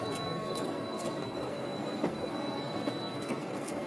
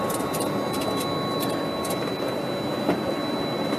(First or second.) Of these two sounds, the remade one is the first